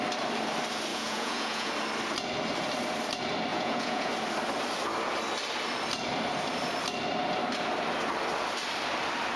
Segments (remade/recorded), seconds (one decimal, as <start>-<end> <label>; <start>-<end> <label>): 0.0-0.9 recorded; 0.9-1.7 remade; 1.7-3.5 recorded; 3.5-4.1 remade; 4.1-9.4 recorded